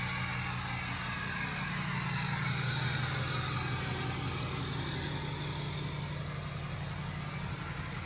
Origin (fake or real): real